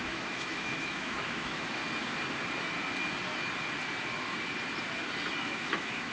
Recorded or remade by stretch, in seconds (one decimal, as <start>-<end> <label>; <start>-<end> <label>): 0.0-1.8 remade; 1.8-5.4 recorded; 5.4-6.1 remade